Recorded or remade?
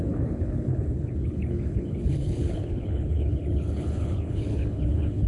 remade